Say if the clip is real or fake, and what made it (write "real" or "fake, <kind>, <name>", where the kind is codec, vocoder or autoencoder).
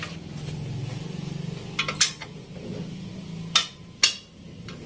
real